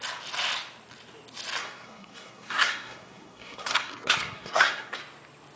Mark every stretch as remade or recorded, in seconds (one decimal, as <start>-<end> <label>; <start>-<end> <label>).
0.0-1.6 recorded; 1.6-5.0 remade; 5.0-5.6 recorded